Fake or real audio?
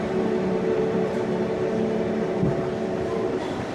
fake